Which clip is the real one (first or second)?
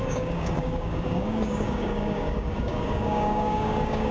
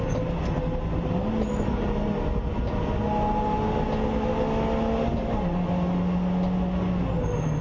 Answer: second